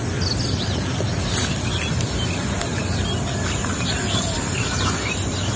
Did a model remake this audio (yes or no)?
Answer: yes